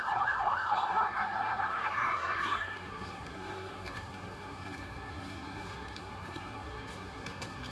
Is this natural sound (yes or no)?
no